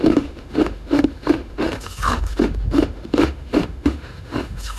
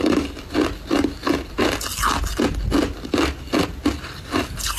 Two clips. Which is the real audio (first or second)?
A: second